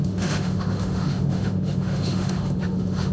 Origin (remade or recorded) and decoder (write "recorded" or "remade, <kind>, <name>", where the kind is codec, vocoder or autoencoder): remade, autoencoder, DAC-VAE